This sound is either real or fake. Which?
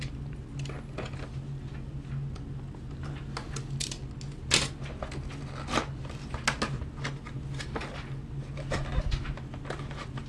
real